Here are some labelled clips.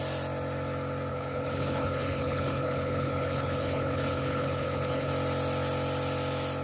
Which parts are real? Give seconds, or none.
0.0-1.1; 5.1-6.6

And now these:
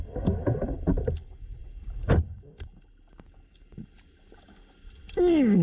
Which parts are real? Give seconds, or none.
0.0-5.6